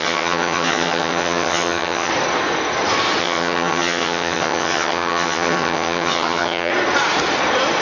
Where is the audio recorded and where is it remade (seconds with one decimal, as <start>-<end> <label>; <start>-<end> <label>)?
0.0-2.1 remade; 2.1-3.2 recorded; 3.2-6.7 remade; 6.7-7.8 recorded